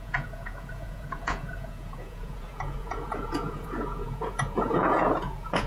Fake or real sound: fake